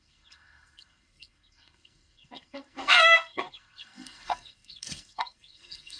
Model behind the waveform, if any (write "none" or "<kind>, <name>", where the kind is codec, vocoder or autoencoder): codec, SNAC